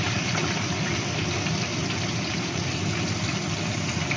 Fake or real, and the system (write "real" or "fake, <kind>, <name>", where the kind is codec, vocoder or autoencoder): real